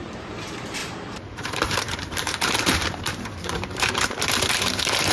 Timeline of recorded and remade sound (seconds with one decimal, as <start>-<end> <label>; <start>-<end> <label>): 0.0-5.1 remade